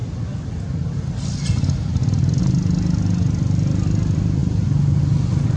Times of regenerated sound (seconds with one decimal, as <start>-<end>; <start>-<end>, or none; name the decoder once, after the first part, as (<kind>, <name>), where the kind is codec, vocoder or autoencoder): none